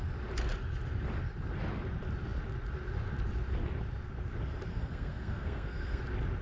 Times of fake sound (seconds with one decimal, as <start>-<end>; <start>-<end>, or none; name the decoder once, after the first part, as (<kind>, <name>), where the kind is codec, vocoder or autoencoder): 4.7-6.0 (codec, SNAC)